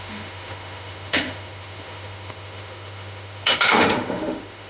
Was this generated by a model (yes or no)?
yes